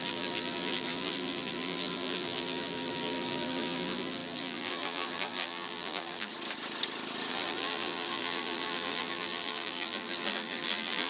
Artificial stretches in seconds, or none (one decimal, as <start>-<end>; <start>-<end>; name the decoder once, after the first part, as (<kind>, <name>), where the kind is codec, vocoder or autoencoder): 0.0-6.3 (vocoder, BigVGAN v2); 7.3-11.1